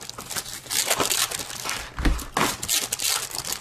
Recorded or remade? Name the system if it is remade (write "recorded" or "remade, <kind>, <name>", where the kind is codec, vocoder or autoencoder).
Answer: recorded